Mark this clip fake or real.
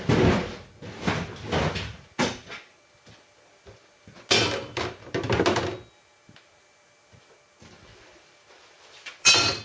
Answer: real